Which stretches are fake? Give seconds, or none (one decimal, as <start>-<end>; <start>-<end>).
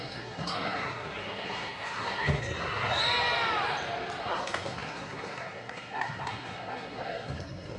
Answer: 0.0-3.0; 4.2-7.8